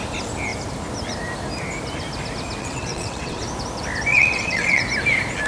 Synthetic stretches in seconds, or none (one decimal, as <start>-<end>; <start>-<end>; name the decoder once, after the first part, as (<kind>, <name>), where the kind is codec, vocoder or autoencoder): 2.6-3.4 (vocoder, WaveNeXt); 4.1-4.8